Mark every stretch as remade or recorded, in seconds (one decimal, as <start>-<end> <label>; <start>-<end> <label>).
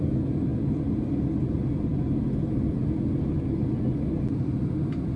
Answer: 0.0-5.2 recorded